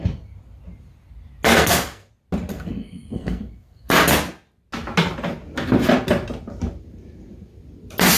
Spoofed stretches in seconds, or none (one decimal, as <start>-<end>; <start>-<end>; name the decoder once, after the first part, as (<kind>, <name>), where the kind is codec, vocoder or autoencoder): 1.5-2.1 (codec, SNAC); 2.5-3.9